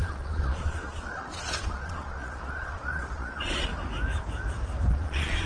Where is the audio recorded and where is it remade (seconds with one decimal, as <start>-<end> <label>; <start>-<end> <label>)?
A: 0.0-3.7 remade; 3.7-4.9 recorded; 4.9-5.5 remade